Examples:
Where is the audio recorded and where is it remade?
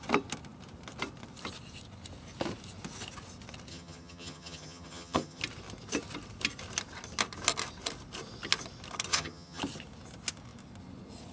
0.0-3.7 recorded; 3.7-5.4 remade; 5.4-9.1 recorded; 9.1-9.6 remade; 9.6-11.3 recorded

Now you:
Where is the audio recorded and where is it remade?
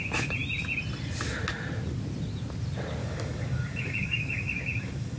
0.0-3.0 recorded; 3.0-5.2 remade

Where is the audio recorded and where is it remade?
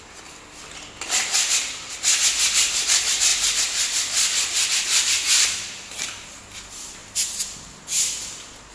0.0-3.3 recorded; 3.3-6.4 remade; 6.4-8.7 recorded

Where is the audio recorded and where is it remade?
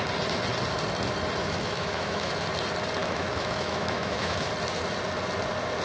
0.0-1.4 recorded; 1.4-2.3 remade; 2.3-3.0 recorded; 3.0-4.5 remade; 4.5-5.8 recorded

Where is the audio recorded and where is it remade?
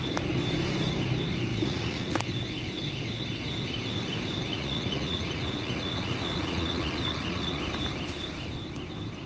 0.0-1.5 recorded; 1.5-2.2 remade; 2.2-4.5 recorded; 4.5-7.6 remade; 7.6-9.3 recorded